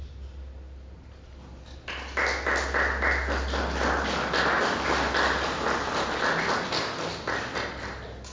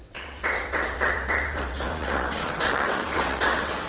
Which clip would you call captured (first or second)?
first